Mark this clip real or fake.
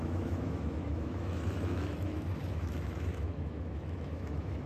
fake